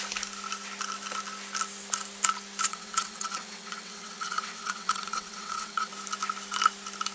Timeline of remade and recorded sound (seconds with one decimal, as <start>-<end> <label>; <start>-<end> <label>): 0.0-2.7 recorded; 2.7-5.9 remade; 5.9-7.1 recorded